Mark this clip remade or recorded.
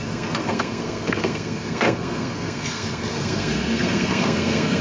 remade